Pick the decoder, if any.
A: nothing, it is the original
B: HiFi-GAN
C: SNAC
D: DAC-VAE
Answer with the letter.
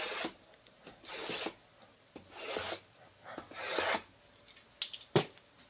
A